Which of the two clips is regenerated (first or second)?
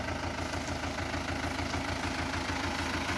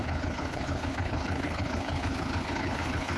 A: second